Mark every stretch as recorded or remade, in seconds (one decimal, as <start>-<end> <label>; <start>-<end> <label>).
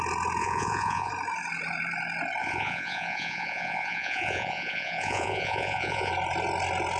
0.0-0.4 recorded; 0.4-1.1 remade; 1.1-2.4 recorded; 2.4-6.1 remade; 6.1-7.0 recorded